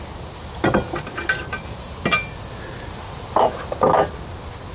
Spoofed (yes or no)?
no